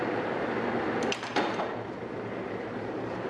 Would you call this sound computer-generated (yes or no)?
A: yes